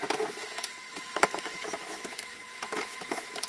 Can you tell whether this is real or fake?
fake